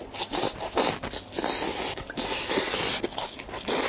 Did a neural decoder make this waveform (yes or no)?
no